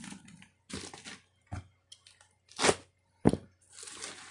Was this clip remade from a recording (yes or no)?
no